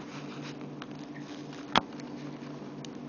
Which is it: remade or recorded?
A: recorded